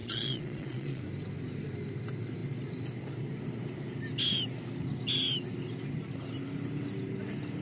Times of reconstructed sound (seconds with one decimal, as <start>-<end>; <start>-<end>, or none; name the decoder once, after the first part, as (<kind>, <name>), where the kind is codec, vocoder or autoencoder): 0.0-1.0 (vocoder, Vocos)